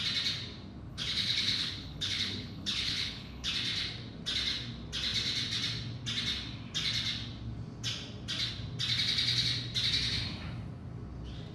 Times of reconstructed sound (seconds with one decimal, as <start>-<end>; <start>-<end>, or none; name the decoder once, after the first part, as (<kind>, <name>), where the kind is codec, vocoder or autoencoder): 0.9-3.5 (codec, HILCodec)